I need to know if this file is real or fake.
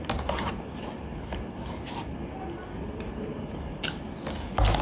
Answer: real